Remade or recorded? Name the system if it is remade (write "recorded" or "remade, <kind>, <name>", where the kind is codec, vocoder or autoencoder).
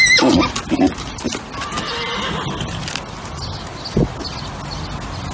recorded